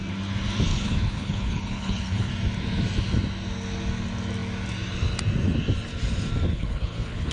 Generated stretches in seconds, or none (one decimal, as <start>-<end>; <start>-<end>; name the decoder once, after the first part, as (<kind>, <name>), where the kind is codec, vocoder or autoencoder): 0.7-2.3 (codec, HILCodec); 6.5-7.3